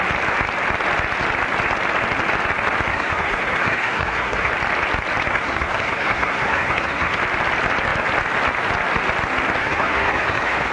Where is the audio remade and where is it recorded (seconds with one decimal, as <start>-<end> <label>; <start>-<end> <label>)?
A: 0.0-2.9 recorded; 2.9-4.5 remade; 4.5-5.3 recorded; 5.3-7.2 remade; 7.2-9.6 recorded; 9.6-10.7 remade